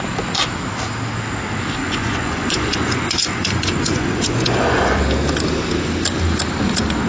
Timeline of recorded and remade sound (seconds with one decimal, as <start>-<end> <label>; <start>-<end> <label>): 0.0-1.8 recorded; 1.8-5.0 remade; 5.0-7.1 recorded